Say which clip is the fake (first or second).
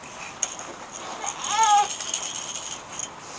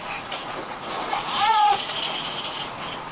second